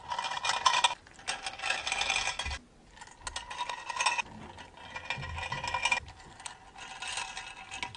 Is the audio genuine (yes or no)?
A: yes